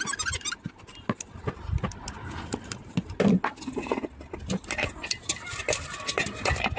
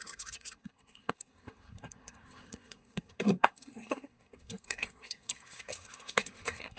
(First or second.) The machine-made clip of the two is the second